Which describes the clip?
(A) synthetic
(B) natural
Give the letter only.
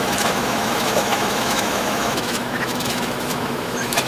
A